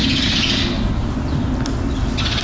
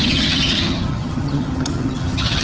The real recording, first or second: first